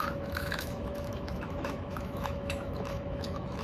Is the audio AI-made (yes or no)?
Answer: yes